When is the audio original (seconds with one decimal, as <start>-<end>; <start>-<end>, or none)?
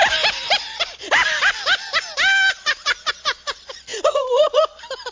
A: 0.0-3.9; 4.6-5.1